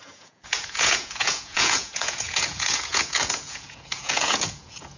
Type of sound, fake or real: fake